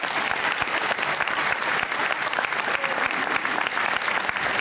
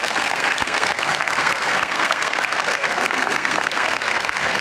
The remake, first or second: second